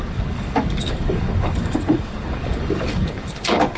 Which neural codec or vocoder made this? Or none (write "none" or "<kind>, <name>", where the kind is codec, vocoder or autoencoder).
codec, DAC